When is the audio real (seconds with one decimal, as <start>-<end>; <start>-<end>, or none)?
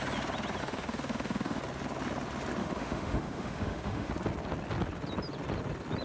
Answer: 0.0-0.6; 1.6-2.6; 4.1-6.0